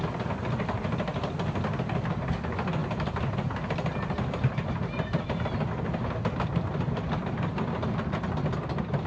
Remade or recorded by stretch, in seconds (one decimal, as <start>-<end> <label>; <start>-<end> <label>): 0.0-9.1 recorded